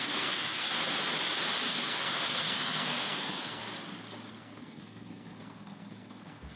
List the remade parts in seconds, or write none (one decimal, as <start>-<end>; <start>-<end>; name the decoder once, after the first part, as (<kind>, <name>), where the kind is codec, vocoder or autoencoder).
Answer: 0.0-0.7 (codec, SNAC); 1.7-3.6; 4.3-6.6